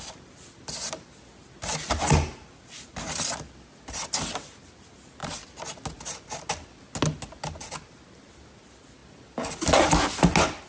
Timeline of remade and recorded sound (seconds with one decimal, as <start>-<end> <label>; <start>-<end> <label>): 0.0-10.7 recorded